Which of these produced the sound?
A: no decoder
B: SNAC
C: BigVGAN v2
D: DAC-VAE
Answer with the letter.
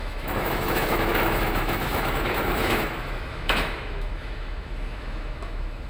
D